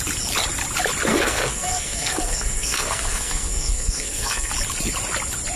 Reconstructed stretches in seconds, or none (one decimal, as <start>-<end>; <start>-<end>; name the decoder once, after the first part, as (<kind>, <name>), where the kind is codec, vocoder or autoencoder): 1.1-4.5 (codec, SNAC)